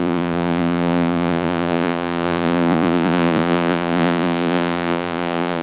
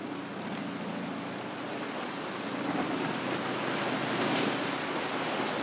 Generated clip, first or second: first